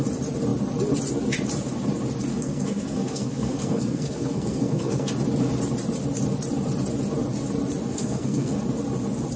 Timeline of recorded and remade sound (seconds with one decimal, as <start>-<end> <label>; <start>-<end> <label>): 0.0-2.3 recorded; 2.3-5.1 remade; 5.1-7.9 recorded; 7.9-8.6 remade; 8.6-9.4 recorded

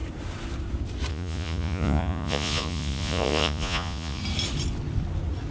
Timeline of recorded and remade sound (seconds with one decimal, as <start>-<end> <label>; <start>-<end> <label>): 0.0-1.1 recorded; 1.1-4.2 remade; 4.2-5.5 recorded

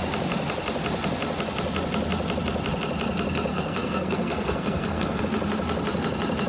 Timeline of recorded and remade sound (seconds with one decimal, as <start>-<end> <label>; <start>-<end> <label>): 0.0-3.5 recorded; 3.5-5.2 remade; 5.2-6.5 recorded

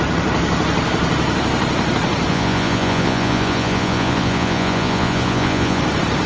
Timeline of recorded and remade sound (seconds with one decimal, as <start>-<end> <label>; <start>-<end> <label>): 0.0-2.3 recorded; 2.3-5.8 remade; 5.8-6.3 recorded

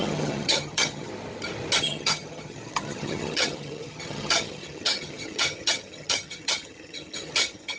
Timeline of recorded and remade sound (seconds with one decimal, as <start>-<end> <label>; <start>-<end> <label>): 0.0-1.1 remade; 1.1-1.8 recorded; 1.8-7.8 remade

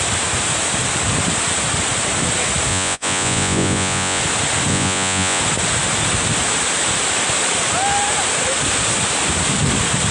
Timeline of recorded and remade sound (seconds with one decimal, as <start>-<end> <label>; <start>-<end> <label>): 0.0-2.7 recorded; 2.7-4.2 remade; 4.2-4.7 recorded; 4.7-5.4 remade; 5.4-10.1 recorded

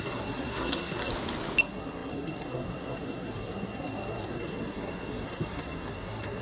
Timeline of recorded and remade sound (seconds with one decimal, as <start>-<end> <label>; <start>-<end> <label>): 0.0-1.1 remade; 1.1-1.6 recorded; 1.6-6.4 remade

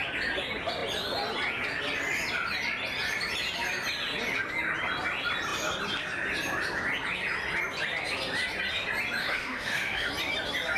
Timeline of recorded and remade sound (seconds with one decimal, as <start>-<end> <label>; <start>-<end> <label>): 0.0-9.2 recorded; 9.2-10.1 remade; 10.1-10.8 recorded